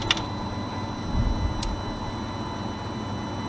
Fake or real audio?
real